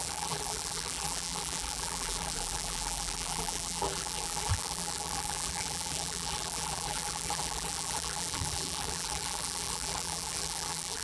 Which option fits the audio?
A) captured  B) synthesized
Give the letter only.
B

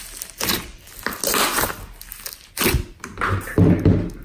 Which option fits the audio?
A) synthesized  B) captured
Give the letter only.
B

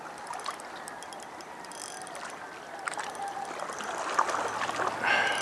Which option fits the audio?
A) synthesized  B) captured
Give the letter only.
B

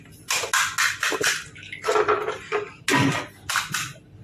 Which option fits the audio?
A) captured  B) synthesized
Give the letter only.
A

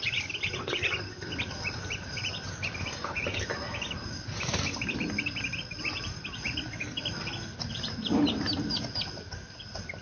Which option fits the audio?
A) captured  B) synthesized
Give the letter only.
A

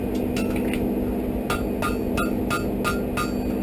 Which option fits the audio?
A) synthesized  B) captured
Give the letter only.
B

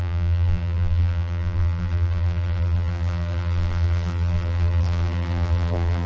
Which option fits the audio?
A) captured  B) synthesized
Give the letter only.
B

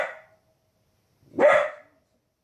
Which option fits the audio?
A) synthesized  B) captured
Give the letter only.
B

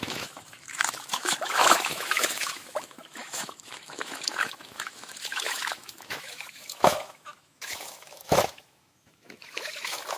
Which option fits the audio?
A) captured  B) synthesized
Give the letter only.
B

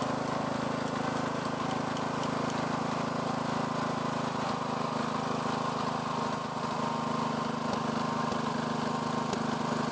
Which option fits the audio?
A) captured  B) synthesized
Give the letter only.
A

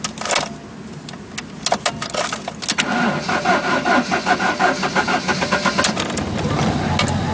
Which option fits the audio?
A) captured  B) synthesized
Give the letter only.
A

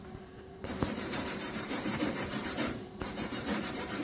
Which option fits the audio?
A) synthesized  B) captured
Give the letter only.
A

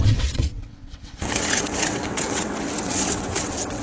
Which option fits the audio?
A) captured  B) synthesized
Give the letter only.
B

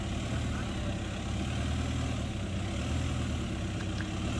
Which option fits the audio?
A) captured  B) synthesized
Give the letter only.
A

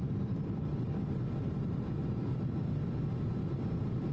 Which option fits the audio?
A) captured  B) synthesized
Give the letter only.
A